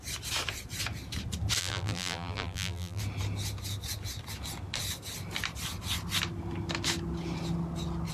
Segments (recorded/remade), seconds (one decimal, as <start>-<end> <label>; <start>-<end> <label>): 0.0-1.6 recorded; 1.6-3.0 remade; 3.0-8.1 recorded